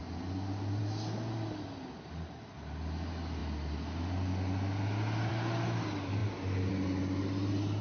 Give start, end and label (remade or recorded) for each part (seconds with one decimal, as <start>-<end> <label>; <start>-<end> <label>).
0.0-7.8 recorded